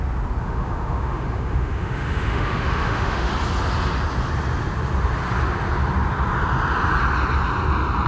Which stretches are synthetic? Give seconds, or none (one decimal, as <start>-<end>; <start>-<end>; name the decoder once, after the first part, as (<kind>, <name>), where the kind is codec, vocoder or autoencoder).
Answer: 0.4-3.3 (autoencoder, DAC-VAE)